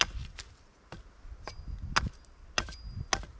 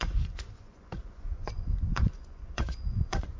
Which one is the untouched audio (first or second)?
first